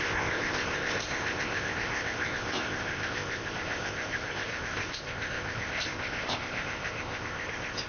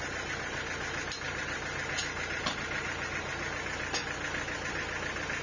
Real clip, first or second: second